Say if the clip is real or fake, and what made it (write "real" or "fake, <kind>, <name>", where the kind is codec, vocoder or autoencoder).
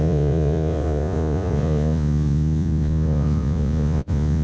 fake, vocoder, Vocos